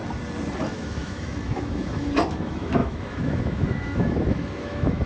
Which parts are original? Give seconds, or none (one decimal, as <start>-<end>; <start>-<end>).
0.0-0.7